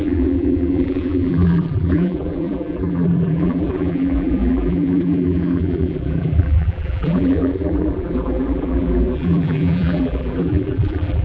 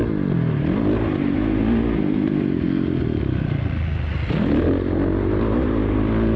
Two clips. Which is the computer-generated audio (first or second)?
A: first